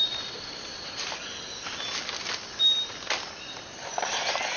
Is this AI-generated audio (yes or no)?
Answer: no